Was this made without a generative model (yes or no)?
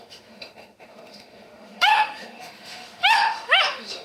no